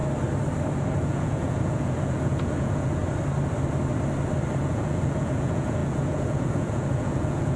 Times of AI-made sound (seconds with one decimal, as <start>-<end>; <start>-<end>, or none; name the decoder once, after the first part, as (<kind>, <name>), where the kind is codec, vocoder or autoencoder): 0.8-3.0 (vocoder, Vocos); 4.7-7.6